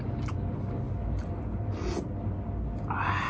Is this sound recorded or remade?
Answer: recorded